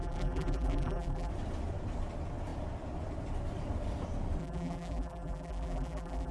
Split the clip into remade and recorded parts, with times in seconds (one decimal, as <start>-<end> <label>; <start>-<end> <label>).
0.0-1.3 remade; 1.3-4.4 recorded; 4.4-6.3 remade